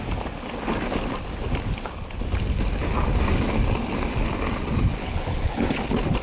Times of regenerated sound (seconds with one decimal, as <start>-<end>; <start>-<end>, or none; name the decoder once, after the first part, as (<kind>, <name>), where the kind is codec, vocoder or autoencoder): 5.0-5.8 (codec, HILCodec)